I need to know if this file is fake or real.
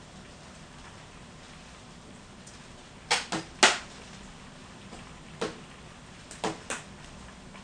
real